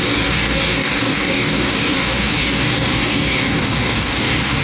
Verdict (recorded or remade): remade